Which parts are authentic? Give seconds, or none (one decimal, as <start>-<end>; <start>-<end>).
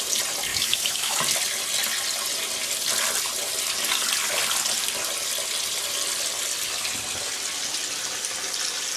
0.0-0.5; 1.2-9.0